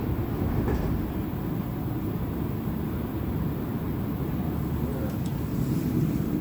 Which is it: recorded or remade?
recorded